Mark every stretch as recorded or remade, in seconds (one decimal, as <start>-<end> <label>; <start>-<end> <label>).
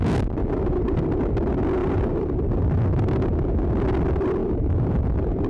0.0-0.4 recorded; 0.4-1.0 remade; 1.0-1.8 recorded; 1.8-2.8 remade; 2.8-4.4 recorded; 4.4-5.5 remade